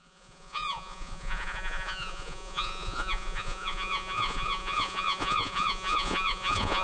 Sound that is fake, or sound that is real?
fake